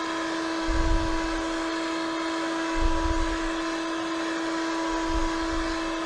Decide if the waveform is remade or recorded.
recorded